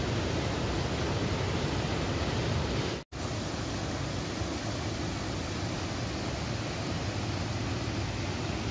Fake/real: real